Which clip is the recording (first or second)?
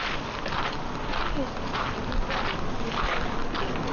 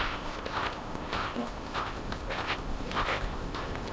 first